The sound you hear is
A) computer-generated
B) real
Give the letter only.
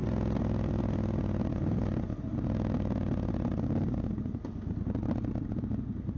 B